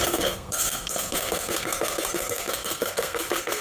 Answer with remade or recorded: remade